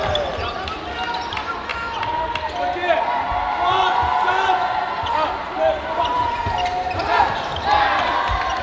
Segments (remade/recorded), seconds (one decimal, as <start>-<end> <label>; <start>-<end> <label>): 0.0-3.6 recorded; 3.6-4.9 remade; 4.9-8.6 recorded